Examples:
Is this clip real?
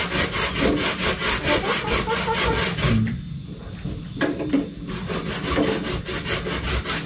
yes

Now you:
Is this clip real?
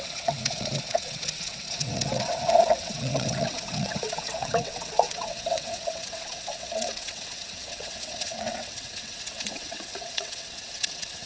no